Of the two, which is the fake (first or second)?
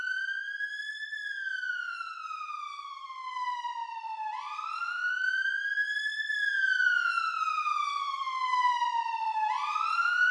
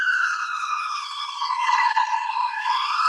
second